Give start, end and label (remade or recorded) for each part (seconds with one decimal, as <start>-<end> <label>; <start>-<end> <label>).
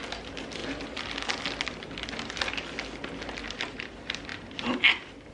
0.0-4.3 recorded; 4.3-5.3 remade